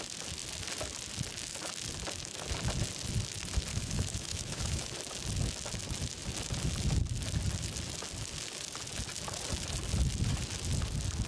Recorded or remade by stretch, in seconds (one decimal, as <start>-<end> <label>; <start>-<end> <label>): 0.0-3.7 recorded; 3.7-5.0 remade; 5.0-11.3 recorded